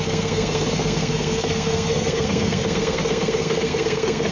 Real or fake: fake